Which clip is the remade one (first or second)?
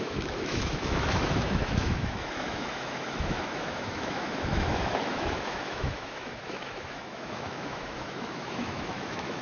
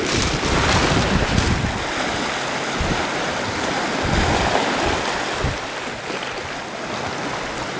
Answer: first